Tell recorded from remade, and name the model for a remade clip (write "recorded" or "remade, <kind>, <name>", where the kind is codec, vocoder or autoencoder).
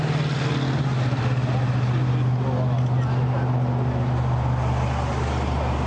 recorded